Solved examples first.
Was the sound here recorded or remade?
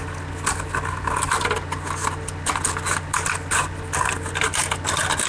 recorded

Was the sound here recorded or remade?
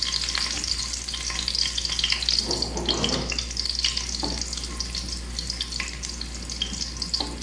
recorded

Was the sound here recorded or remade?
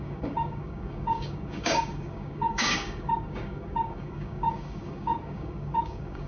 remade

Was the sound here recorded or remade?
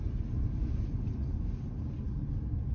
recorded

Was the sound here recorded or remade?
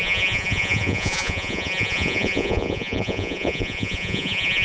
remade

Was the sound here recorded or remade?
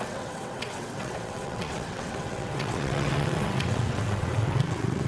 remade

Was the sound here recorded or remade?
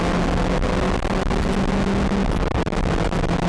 recorded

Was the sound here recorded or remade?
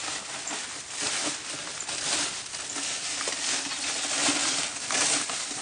recorded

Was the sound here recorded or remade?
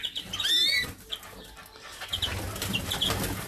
recorded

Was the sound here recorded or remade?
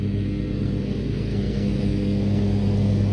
remade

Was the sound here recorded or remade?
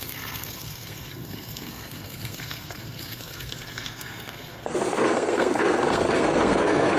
remade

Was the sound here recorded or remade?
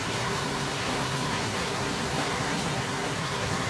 remade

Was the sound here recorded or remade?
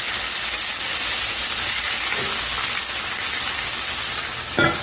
recorded